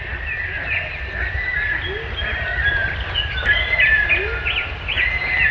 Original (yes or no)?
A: yes